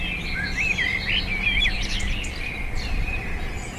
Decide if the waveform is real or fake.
real